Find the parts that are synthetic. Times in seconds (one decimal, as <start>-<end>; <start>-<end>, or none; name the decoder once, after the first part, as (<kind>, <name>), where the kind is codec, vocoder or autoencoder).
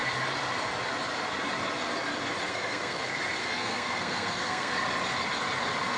2.5-3.0 (codec, SNAC); 3.4-4.7